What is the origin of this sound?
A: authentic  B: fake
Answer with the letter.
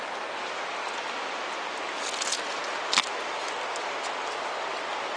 A